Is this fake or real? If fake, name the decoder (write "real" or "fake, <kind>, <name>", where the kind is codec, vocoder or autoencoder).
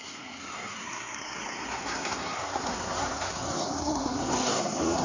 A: fake, codec, SNAC